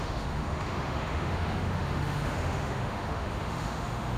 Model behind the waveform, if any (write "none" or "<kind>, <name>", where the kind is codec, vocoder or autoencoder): autoencoder, DAC-VAE